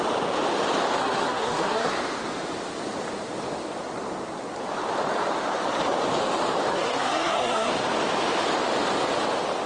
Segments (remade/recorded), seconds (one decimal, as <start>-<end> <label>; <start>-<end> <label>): 0.0-1.0 recorded; 1.0-1.9 remade; 1.9-6.7 recorded; 6.7-7.7 remade; 7.7-9.7 recorded